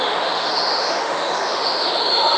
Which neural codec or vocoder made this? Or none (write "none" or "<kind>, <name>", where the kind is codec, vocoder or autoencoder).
autoencoder, DAC-VAE